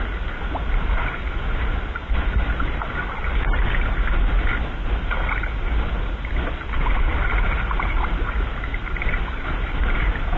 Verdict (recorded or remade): recorded